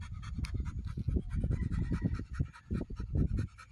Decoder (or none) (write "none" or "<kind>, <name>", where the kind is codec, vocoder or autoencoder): none